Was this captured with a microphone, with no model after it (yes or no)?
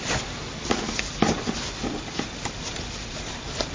no